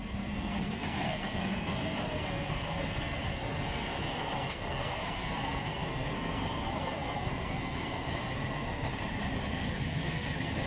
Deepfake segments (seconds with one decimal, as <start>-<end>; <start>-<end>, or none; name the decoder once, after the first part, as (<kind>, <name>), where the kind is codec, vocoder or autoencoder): 0.0-8.9 (codec, SNAC); 9.5-10.7